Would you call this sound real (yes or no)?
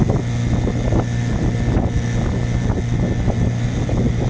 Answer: yes